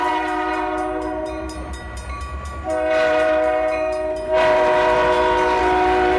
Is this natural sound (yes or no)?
no